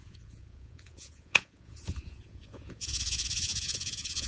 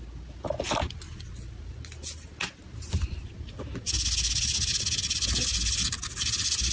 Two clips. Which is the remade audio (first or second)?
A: first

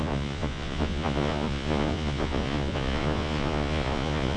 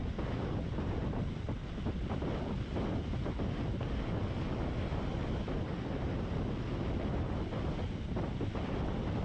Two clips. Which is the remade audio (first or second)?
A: first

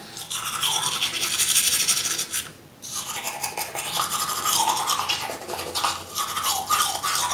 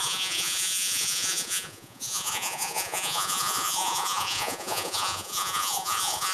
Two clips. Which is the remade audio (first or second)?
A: second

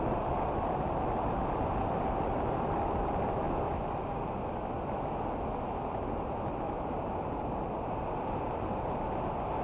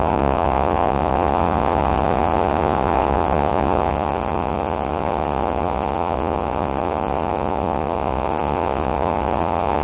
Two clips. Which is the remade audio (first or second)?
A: second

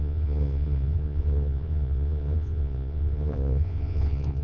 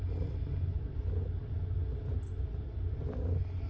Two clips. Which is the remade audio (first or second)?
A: first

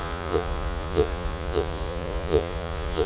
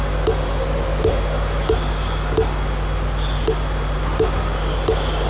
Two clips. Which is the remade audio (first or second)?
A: first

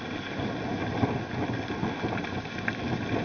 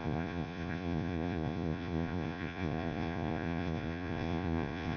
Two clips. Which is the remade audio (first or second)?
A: second